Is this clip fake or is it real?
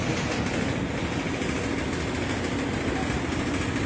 real